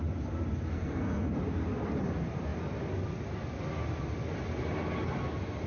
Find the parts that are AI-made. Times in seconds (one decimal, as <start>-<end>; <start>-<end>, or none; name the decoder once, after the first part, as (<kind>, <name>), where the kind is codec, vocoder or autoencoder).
0.7-1.3 (codec, SNAC)